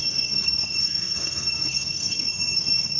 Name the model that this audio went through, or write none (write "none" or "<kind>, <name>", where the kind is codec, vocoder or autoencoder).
codec, SNAC